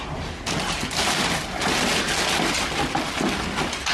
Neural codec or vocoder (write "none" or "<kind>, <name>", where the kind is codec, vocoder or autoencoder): none